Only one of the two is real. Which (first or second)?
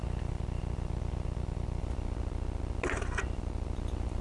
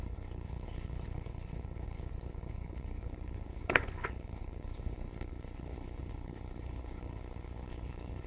first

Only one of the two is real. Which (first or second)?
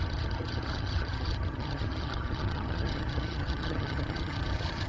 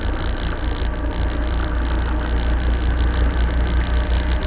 second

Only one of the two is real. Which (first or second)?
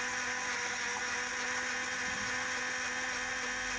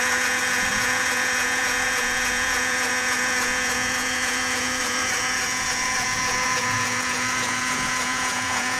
first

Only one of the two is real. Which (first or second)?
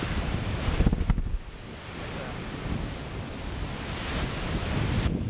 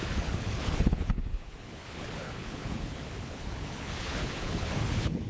first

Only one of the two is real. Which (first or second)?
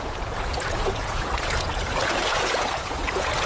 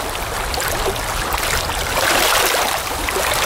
second